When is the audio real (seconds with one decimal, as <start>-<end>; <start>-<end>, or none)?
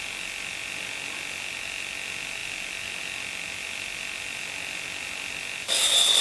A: 0.0-6.2